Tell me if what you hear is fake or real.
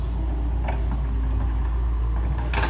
real